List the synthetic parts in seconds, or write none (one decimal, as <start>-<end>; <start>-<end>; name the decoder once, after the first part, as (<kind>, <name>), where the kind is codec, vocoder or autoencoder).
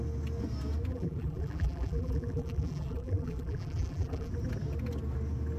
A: 0.9-4.3 (vocoder, BigVGAN v2)